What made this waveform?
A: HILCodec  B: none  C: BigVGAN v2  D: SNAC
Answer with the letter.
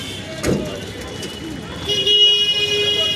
B